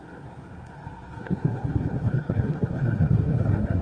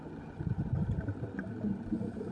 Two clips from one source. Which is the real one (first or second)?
second